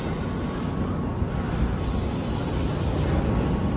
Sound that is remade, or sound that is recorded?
recorded